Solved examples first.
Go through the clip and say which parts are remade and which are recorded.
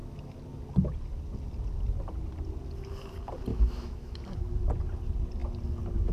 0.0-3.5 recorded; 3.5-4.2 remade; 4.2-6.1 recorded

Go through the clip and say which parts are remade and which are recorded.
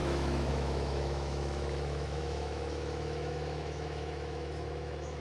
0.0-5.2 remade